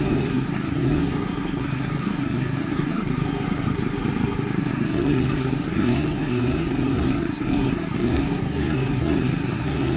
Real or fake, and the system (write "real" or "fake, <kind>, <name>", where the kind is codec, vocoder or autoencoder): fake, codec, SNAC